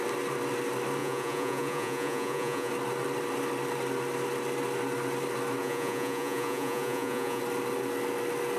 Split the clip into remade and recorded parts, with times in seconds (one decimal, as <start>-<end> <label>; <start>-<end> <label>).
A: 0.0-1.0 recorded; 1.0-2.7 remade; 2.7-5.6 recorded; 5.6-7.4 remade; 7.4-8.6 recorded